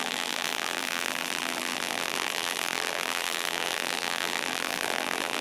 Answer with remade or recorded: remade